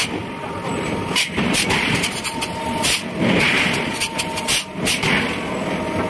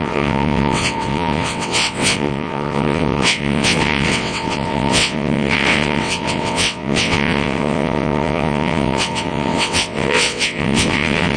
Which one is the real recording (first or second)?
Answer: first